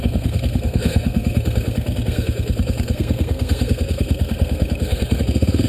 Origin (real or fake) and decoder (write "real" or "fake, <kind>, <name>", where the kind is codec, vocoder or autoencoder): fake, codec, SNAC